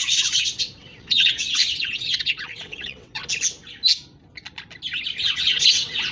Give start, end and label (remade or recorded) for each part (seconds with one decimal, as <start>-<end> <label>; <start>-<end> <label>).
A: 0.0-3.2 remade; 3.2-5.2 recorded; 5.2-6.1 remade